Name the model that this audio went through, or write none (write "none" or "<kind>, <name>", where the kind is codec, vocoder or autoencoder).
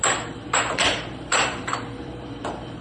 vocoder, BigVGAN v2